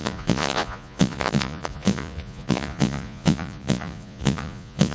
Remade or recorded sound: remade